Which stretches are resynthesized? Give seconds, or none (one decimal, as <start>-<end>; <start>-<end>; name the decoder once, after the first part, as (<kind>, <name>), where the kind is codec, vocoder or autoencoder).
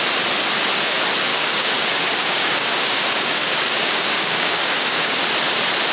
1.3-1.8 (codec, DAC); 2.2-5.2